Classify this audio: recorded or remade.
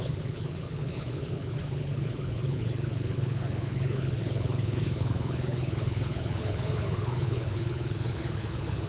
remade